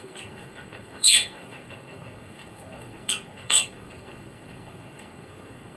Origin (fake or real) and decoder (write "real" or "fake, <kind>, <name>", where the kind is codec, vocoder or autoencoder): fake, codec, SNAC